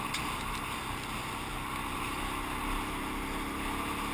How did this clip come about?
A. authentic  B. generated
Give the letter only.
A